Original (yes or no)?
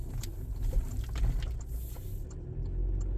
yes